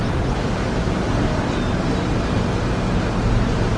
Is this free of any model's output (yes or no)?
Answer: yes